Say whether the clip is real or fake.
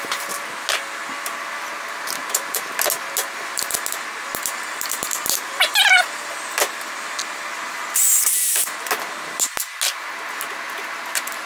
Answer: real